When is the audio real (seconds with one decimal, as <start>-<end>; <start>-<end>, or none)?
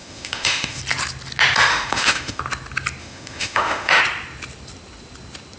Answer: 0.8-1.7; 2.4-3.0; 4.0-5.6